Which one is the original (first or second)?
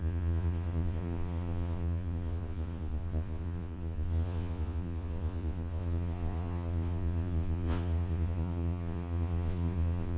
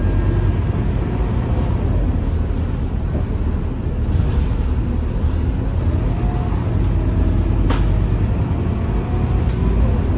second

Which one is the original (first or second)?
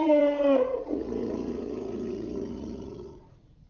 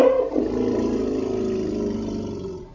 second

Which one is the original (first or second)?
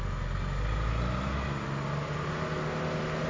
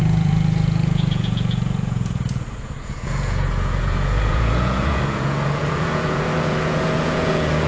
first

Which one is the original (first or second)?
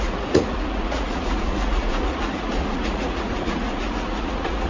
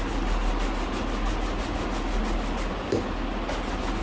second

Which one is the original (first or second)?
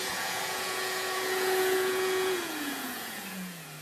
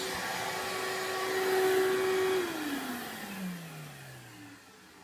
second